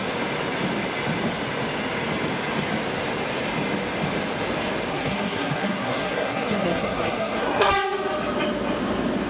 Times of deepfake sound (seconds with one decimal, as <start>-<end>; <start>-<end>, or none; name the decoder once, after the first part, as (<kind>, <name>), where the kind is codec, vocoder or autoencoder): 4.9-7.7 (codec, SNAC)